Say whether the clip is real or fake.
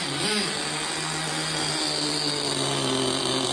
real